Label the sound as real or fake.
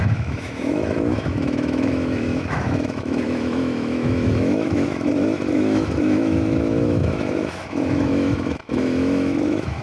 fake